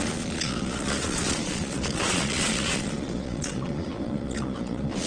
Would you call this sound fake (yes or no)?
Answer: yes